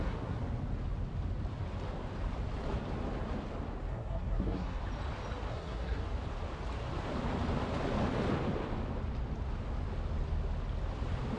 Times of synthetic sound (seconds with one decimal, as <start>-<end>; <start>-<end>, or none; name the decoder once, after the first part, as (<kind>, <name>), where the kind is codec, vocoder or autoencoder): 0.0-0.4 (codec, SNAC); 3.9-4.8; 5.5-6.0